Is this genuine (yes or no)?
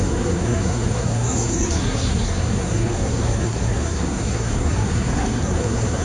no